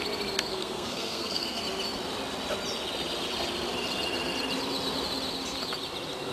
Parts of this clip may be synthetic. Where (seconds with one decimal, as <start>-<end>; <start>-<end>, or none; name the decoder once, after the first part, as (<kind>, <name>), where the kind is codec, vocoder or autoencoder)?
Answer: 0.5-1.6 (codec, SNAC)